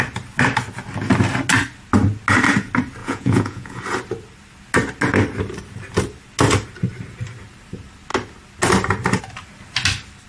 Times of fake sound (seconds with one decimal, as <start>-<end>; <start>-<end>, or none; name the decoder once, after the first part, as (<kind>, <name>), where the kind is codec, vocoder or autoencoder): 3.0-3.8 (vocoder, Vocos)